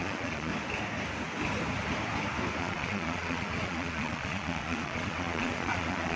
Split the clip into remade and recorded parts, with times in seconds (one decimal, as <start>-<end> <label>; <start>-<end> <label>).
0.0-0.5 remade; 0.5-2.6 recorded; 2.6-6.2 remade